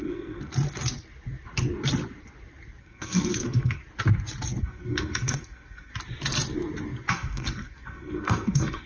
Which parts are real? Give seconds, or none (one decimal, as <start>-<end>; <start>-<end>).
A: 0.5-2.8; 3.8-4.6; 5.9-7.1